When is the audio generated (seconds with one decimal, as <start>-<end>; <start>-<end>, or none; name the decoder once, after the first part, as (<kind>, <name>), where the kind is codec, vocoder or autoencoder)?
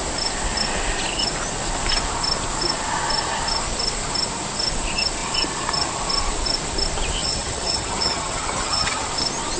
7.2-9.1 (vocoder, HiFi-GAN)